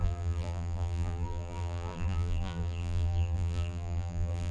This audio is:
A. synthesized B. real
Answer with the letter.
A